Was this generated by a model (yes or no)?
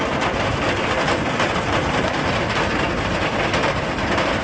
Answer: no